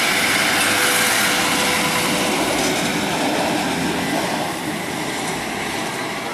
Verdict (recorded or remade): recorded